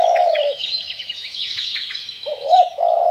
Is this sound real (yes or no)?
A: no